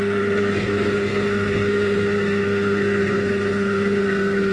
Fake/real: fake